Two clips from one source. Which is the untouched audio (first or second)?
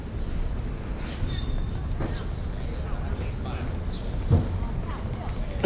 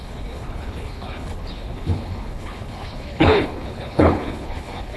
first